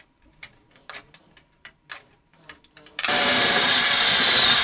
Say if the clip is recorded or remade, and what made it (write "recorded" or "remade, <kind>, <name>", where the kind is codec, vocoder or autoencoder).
remade, vocoder, BigVGAN v2